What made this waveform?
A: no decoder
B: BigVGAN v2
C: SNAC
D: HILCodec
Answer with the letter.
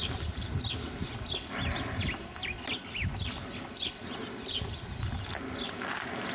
A